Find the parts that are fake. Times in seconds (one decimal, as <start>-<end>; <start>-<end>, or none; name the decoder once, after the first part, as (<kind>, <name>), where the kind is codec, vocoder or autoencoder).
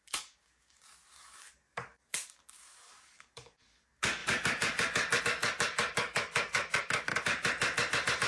0.0-7.1 (codec, DAC)